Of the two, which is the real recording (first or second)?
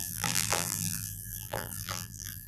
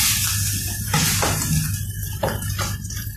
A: second